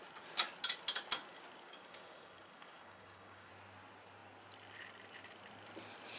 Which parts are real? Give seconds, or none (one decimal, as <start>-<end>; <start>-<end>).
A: 0.0-1.6; 3.5-6.2